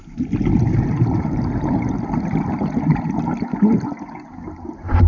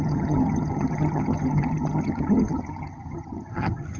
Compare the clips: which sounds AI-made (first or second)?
second